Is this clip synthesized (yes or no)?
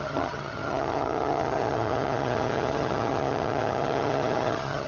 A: yes